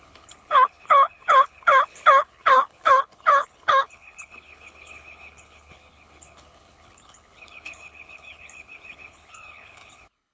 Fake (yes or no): yes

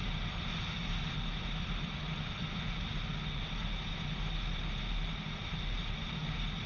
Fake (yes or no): no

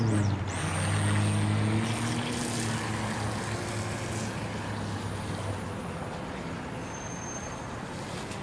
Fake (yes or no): no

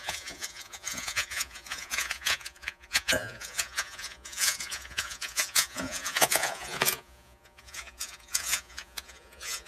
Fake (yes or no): yes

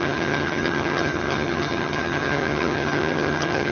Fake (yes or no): yes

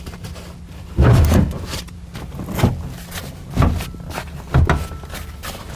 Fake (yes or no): no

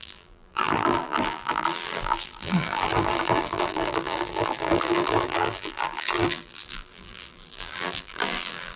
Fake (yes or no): yes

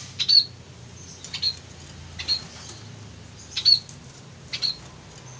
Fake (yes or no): no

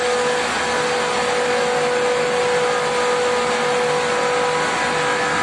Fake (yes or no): no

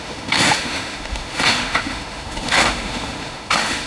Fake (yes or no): yes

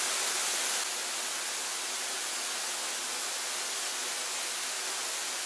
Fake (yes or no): no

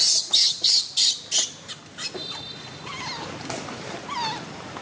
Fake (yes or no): no